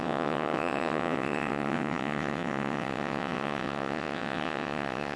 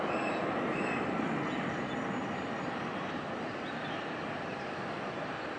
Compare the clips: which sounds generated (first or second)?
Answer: first